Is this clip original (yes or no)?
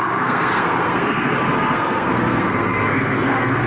no